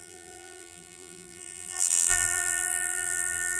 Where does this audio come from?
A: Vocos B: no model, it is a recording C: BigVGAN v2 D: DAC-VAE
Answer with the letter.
C